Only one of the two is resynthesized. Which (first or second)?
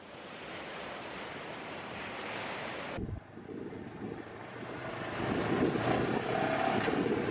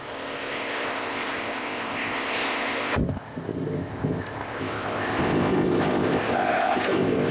second